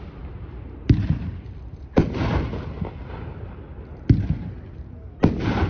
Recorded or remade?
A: recorded